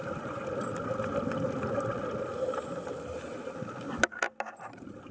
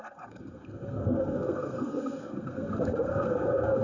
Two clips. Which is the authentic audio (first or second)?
first